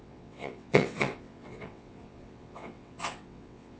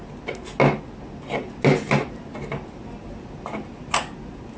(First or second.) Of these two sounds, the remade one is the first